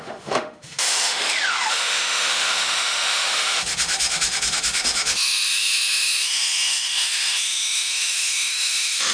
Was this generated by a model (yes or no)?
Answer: yes